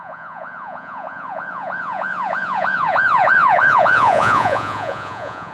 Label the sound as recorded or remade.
remade